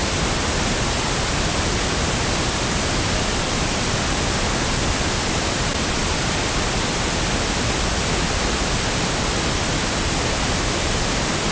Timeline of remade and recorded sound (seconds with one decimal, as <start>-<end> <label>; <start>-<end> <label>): 0.0-11.5 recorded